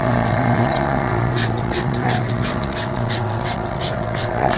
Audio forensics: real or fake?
fake